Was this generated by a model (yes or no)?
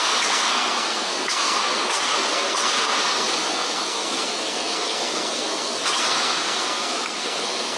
yes